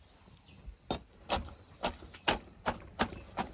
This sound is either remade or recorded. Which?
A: recorded